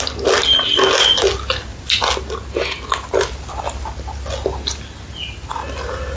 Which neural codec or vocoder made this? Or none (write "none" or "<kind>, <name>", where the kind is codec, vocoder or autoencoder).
none